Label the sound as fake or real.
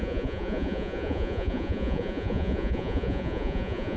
fake